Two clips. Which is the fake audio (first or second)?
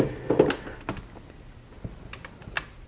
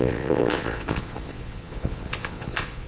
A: second